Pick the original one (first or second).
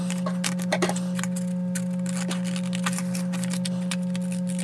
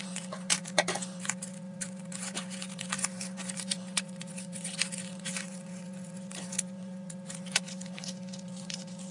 first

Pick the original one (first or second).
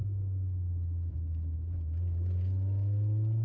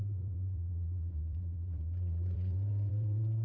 first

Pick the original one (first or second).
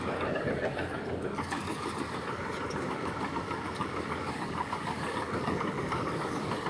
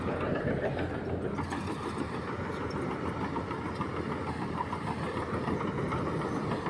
second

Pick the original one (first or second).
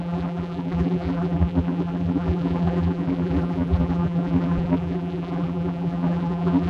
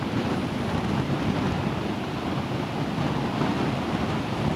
second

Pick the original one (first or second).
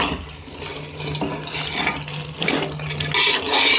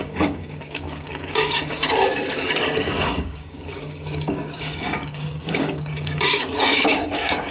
first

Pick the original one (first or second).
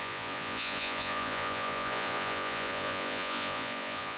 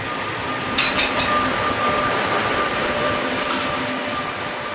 second